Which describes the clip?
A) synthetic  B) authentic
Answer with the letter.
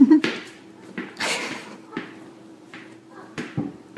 A